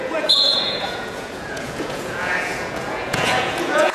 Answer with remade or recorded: remade